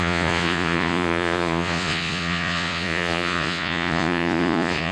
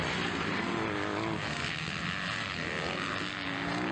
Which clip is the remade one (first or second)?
first